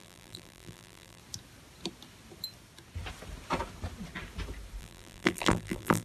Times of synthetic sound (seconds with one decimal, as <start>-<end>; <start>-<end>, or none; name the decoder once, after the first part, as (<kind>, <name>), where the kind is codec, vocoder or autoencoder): 0.0-1.2 (vocoder, BigVGAN v2); 4.8-6.0